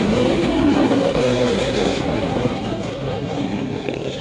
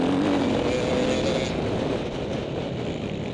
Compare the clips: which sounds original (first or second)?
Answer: second